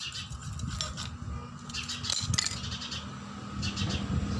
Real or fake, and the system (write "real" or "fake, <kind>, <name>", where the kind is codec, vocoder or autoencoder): real